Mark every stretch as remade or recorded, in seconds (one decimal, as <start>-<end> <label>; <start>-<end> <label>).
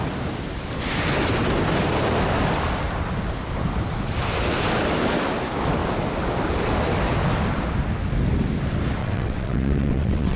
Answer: 0.0-9.0 recorded; 9.0-10.4 remade